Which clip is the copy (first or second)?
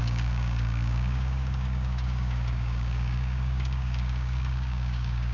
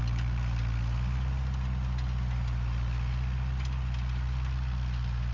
first